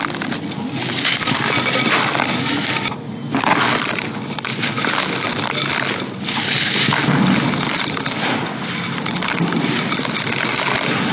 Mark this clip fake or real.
real